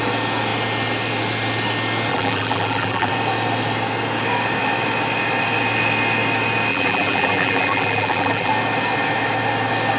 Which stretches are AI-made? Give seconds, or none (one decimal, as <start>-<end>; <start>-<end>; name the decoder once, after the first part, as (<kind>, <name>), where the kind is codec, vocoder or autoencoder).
2.1-3.1 (vocoder, BigVGAN v2); 6.7-8.5